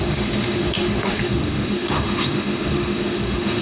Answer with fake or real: fake